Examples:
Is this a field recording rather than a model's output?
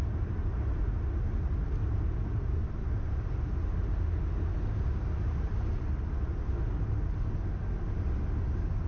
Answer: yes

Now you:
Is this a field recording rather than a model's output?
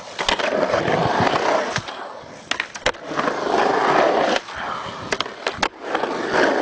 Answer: yes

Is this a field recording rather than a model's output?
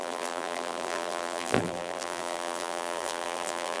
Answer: no